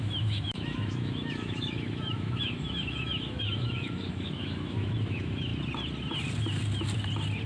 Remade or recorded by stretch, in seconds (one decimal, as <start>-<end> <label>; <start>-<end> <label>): 0.0-5.5 remade; 5.5-7.5 recorded